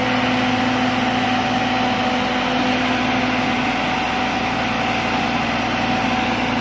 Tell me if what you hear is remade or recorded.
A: recorded